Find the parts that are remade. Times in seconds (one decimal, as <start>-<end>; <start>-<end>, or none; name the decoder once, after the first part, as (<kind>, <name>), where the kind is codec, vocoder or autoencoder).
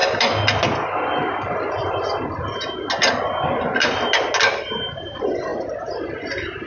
none